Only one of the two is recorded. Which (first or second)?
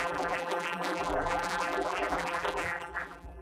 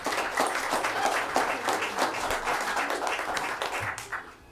second